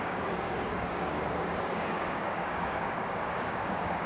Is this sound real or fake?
fake